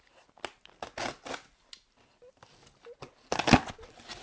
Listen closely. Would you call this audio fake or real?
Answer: real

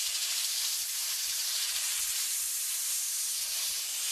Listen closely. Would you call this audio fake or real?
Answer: fake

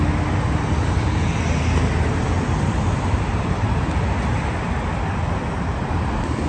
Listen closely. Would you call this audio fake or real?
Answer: real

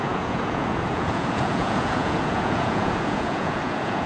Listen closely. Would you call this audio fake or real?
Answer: fake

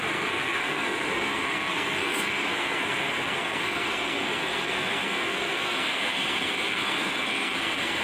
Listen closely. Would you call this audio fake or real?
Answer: fake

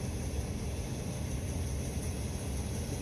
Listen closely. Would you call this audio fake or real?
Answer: real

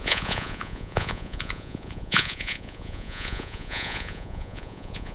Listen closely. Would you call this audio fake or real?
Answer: fake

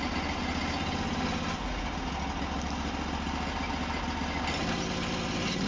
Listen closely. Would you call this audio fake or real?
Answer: real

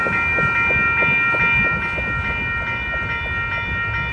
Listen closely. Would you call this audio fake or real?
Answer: real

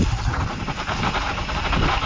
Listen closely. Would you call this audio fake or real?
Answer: real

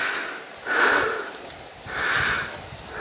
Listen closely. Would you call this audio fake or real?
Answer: real